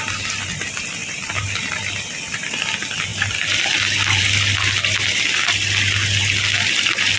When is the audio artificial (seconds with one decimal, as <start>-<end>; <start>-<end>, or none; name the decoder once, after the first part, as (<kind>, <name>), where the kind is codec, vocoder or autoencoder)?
none